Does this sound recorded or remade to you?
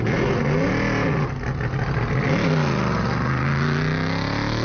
recorded